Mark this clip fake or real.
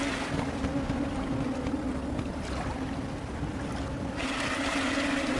real